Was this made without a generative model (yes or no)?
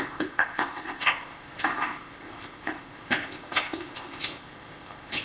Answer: no